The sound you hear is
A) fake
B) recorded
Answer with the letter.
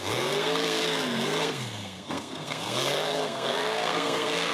A